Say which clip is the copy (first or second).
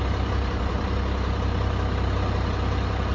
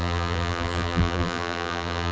second